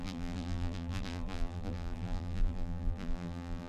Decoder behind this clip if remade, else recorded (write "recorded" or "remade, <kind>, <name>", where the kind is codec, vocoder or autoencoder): remade, vocoder, BigVGAN v2